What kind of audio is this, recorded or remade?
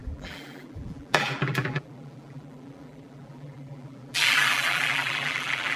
remade